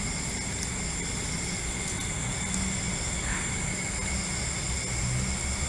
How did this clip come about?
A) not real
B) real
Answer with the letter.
B